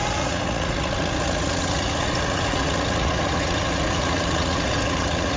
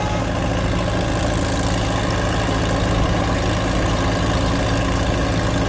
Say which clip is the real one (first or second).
second